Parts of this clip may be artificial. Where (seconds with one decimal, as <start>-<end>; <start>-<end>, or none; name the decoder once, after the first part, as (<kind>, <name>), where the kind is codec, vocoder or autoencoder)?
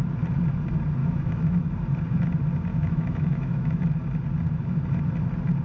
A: 1.0-1.6 (autoencoder, DAC-VAE); 2.7-3.8